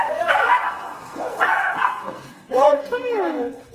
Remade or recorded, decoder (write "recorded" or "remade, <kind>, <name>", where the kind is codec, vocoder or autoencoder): remade, codec, SNAC